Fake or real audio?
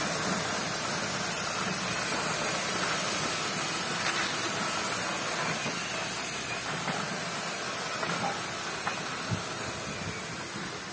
real